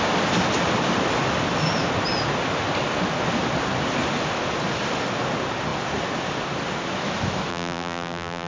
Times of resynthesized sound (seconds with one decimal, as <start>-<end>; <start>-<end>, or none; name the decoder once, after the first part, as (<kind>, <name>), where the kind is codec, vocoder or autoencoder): 7.5-8.5 (vocoder, BigVGAN v2)